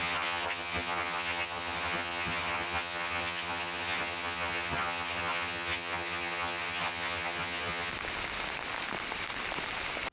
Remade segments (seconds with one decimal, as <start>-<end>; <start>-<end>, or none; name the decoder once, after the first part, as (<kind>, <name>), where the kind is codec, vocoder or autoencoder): 0.0-7.9 (vocoder, HiFi-GAN)